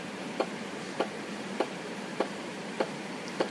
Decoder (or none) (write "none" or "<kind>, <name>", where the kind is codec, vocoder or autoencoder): vocoder, BigVGAN v2